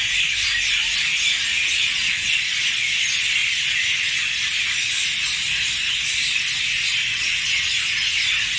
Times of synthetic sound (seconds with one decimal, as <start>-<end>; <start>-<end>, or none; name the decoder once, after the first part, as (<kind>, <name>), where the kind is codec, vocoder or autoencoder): 1.5-2.3 (vocoder, WaveNeXt); 7.1-7.7